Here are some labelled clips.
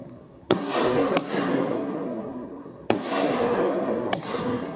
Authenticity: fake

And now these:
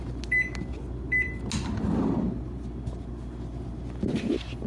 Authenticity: real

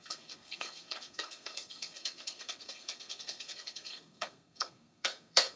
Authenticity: fake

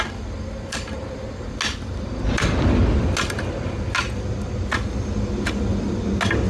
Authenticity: real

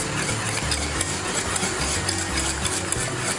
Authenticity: real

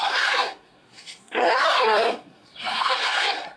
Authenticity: fake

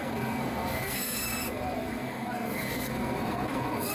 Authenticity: fake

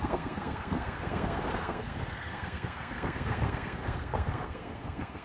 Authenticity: fake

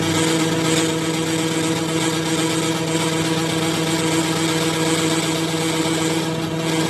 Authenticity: real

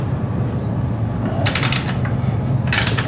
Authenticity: real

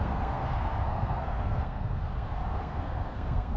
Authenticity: fake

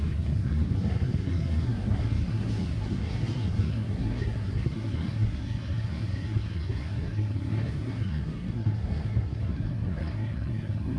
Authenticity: fake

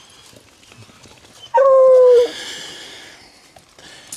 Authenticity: real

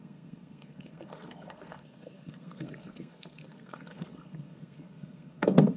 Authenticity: fake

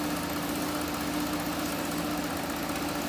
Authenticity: real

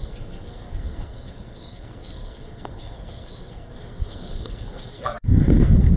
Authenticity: fake